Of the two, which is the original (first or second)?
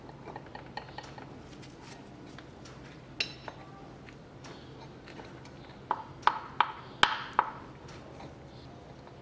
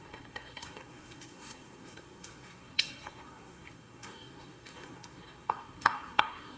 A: first